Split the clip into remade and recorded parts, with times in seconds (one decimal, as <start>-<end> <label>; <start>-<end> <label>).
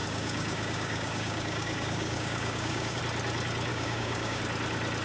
0.0-3.0 remade; 3.0-3.7 recorded; 3.7-4.4 remade; 4.4-5.0 recorded